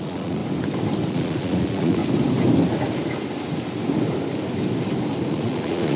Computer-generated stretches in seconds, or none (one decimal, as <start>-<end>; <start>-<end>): 0.0-0.4; 1.1-2.0; 5.3-6.0